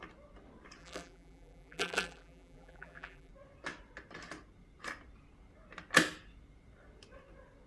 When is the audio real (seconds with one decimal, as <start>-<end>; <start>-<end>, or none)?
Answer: 0.0-0.8; 3.3-7.7